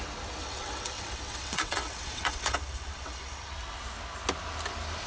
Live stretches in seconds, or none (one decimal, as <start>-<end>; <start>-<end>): 0.0-0.4; 3.5-5.1